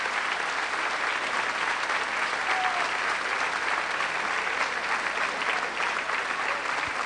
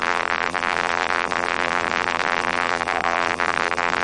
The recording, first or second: first